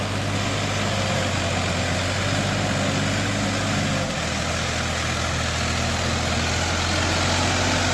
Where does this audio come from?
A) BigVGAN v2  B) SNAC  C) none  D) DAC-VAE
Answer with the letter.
C